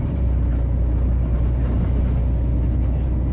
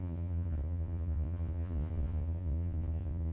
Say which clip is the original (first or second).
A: first